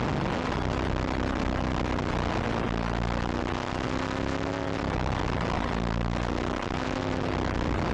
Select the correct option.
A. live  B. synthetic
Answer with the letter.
A